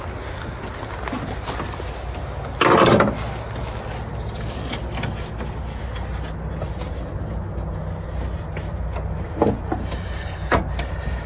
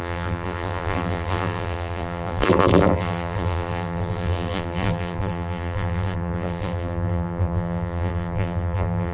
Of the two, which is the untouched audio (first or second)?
first